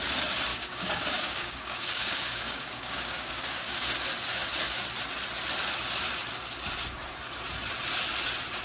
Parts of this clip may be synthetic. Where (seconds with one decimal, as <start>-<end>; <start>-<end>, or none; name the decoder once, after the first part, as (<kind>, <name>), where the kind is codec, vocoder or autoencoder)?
0.5-3.9 (codec, DAC)

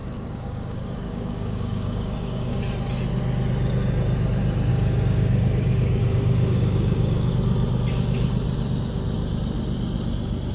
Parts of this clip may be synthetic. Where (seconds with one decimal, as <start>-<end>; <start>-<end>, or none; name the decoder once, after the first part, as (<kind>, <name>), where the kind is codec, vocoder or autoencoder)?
0.0-2.6 (codec, DAC); 4.7-7.3

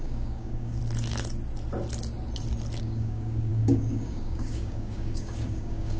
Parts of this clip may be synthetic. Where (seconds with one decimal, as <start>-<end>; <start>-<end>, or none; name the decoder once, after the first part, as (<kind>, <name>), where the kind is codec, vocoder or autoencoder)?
0.0-0.8 (codec, DAC); 2.8-6.0

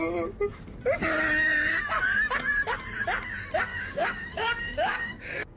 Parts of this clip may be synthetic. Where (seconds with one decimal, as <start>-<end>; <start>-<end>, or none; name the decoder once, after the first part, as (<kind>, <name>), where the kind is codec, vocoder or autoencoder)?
3.7-5.6 (codec, DAC)

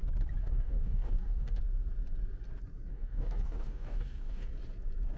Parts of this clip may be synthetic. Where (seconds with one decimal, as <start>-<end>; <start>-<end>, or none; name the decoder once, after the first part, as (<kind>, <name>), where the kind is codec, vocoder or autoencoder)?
0.4-1.6 (codec, DAC); 2.9-4.5